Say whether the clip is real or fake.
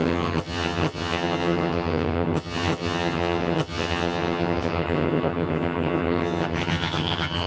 fake